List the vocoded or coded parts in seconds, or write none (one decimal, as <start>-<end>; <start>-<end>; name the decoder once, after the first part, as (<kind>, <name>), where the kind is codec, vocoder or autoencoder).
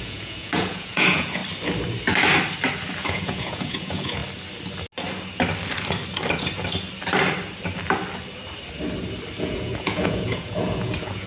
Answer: 0.0-1.4 (vocoder, Vocos); 3.0-4.2; 9.4-11.3